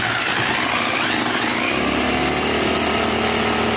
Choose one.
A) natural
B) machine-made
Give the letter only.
A